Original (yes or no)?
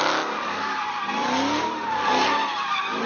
yes